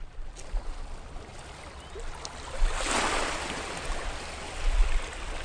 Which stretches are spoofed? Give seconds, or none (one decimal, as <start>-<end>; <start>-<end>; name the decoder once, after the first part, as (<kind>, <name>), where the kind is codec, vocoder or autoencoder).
none